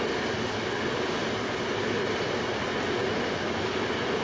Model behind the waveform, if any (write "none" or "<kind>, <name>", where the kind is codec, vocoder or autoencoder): none